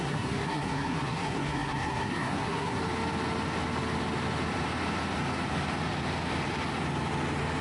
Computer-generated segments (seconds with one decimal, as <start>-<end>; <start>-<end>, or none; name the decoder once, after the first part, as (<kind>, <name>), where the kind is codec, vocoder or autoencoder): 0.0-2.8 (codec, SNAC)